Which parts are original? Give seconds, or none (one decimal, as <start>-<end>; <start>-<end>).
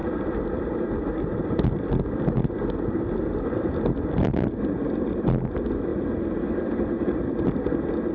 0.0-8.1